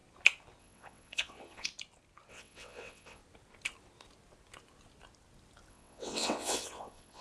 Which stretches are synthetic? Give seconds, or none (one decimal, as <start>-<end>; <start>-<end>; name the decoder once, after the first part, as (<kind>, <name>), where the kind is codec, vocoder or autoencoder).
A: 0.6-1.7 (vocoder, WaveNeXt); 2.3-3.2; 5.7-7.2